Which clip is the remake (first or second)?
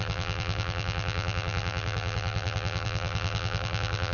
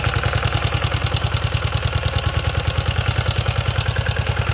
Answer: first